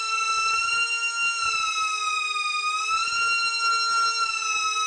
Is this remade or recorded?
recorded